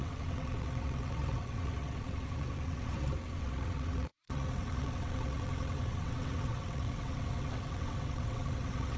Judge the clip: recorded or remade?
remade